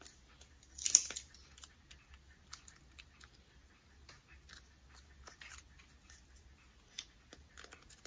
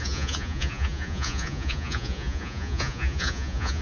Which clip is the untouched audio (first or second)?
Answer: first